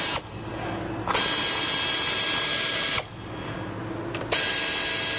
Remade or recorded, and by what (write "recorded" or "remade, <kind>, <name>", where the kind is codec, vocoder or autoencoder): recorded